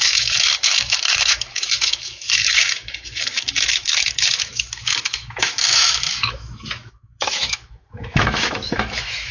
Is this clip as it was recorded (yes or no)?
no